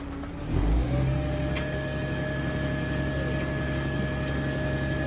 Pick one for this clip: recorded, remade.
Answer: remade